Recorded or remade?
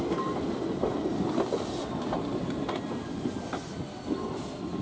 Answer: recorded